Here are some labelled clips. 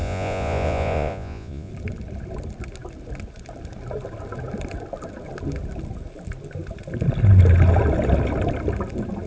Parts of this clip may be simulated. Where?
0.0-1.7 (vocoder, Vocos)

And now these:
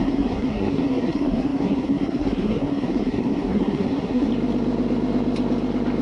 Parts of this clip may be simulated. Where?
0.0-4.3 (codec, SNAC)